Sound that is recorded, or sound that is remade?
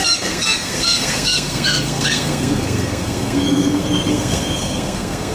remade